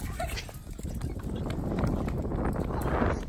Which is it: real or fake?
real